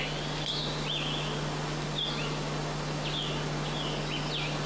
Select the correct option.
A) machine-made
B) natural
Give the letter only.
B